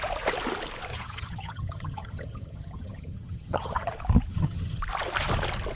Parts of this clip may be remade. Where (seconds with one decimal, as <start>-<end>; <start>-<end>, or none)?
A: 0.9-3.9; 4.3-4.8